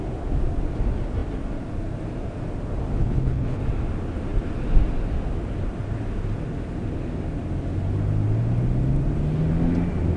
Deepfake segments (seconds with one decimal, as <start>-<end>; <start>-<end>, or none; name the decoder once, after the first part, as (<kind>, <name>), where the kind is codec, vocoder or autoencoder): 3.0-3.6 (codec, HILCodec)